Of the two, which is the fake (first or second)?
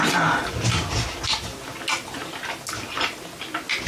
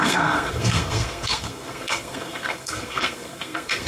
second